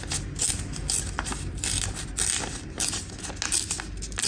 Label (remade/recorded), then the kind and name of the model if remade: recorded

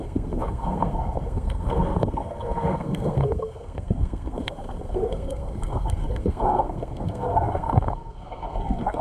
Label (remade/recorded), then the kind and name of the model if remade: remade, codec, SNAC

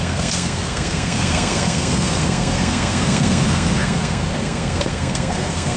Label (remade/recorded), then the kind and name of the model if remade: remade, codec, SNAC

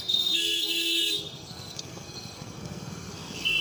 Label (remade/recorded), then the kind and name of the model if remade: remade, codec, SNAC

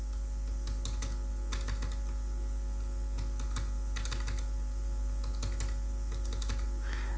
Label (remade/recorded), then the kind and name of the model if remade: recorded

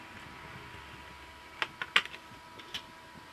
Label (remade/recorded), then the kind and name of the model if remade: recorded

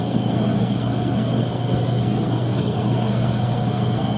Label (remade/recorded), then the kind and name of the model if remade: remade, codec, SNAC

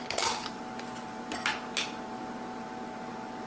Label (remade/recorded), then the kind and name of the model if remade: recorded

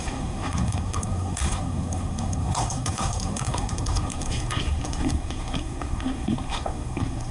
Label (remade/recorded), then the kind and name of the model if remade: remade, codec, SNAC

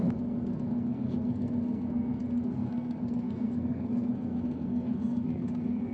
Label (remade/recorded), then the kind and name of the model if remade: remade, codec, SNAC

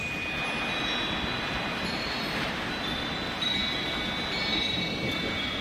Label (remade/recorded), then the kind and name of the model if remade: recorded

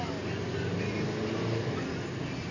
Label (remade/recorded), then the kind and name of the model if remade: recorded